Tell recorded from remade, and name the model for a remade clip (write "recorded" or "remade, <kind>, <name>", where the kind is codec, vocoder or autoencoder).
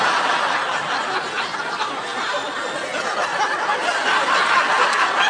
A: recorded